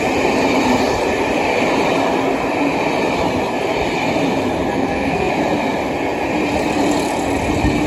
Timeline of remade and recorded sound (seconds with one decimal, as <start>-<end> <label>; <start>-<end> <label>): 0.0-4.7 recorded; 4.7-5.3 remade; 5.3-7.9 recorded